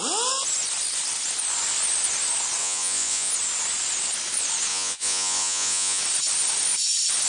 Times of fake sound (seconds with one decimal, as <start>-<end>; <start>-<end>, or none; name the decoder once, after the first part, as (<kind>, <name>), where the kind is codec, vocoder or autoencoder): 2.6-3.3 (vocoder, Vocos); 4.7-6.0

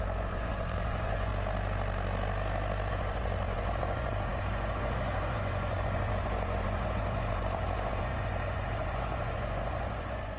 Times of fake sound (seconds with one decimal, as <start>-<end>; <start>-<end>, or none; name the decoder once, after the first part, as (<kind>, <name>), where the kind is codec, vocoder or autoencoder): 0.0-1.3 (vocoder, Vocos); 2.9-10.4